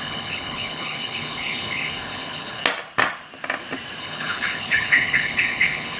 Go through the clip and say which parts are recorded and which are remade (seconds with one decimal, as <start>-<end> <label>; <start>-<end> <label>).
0.0-2.6 remade; 2.6-4.0 recorded; 4.0-6.0 remade